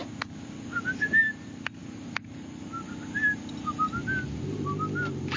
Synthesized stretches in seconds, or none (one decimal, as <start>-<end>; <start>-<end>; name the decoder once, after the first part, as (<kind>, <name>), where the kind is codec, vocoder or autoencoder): none